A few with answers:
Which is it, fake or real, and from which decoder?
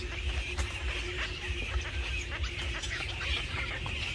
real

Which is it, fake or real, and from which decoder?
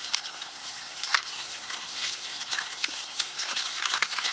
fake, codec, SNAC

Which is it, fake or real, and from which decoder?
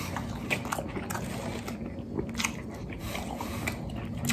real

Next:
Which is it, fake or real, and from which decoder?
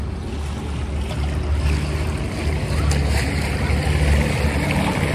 real